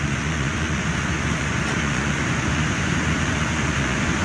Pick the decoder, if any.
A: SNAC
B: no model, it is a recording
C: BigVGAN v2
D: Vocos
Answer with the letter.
D